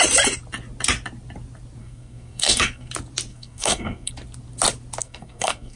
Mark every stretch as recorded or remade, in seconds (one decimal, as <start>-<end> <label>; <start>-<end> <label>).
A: 0.0-1.8 recorded; 1.8-2.9 remade; 2.9-3.3 recorded; 3.3-4.1 remade; 4.1-5.0 recorded; 5.0-5.8 remade